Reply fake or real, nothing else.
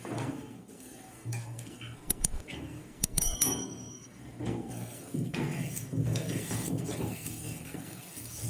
fake